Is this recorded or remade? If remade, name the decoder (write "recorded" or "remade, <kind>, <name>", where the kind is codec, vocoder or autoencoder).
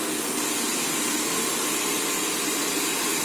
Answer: recorded